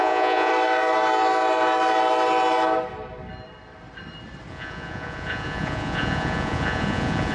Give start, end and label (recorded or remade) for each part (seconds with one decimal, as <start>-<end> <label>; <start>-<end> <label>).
0.0-0.5 remade; 0.5-4.5 recorded; 4.5-7.3 remade